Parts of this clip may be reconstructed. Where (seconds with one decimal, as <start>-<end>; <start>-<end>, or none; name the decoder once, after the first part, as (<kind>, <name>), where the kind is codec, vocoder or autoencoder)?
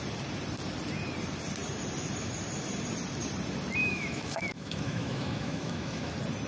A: 3.8-6.1 (autoencoder, DAC-VAE)